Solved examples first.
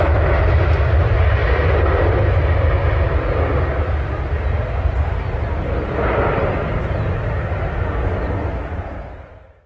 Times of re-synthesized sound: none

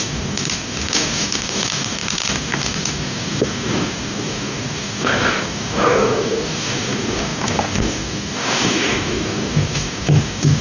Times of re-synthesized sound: 0.0-10.6

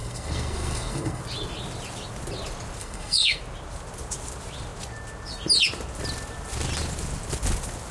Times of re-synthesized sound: 0.0-1.2; 2.8-3.4

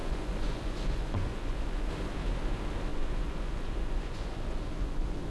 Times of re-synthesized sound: 0.0-1.9; 2.9-5.3